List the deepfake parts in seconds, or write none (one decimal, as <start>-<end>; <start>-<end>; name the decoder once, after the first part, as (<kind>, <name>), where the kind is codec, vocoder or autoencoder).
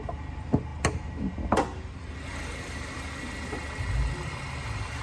none